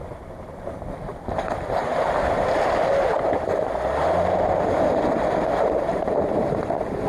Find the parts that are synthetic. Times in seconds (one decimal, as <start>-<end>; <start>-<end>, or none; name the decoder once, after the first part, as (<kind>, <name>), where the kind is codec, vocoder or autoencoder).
0.0-0.7 (vocoder, BigVGAN v2); 1.1-1.9; 5.9-7.1

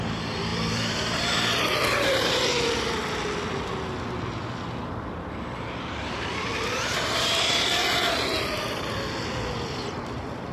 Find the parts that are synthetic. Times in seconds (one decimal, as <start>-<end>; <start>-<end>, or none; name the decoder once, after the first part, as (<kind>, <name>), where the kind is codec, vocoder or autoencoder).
0.5-2.5 (vocoder, BigVGAN v2)

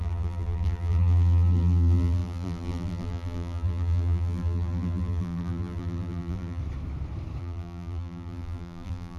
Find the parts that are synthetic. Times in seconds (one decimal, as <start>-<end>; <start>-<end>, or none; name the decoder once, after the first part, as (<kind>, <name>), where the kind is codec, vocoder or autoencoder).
0.0-6.6 (vocoder, BigVGAN v2); 7.4-9.2

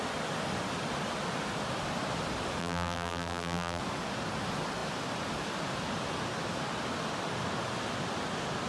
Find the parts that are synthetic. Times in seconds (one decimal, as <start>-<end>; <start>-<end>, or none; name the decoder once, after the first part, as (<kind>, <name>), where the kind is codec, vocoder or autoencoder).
2.6-3.8 (vocoder, BigVGAN v2)

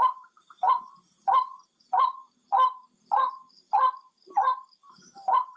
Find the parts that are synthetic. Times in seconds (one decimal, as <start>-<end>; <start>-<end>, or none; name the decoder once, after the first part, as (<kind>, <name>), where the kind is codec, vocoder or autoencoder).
0.0-5.6 (vocoder, BigVGAN v2)

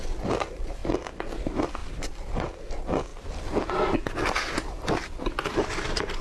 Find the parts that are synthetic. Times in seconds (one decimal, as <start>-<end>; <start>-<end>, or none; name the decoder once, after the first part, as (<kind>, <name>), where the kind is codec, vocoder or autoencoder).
0.0-3.1 (vocoder, BigVGAN v2); 4.9-6.2